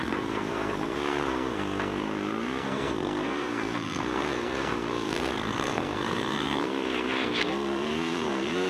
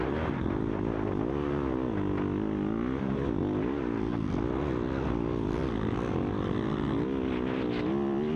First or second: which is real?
second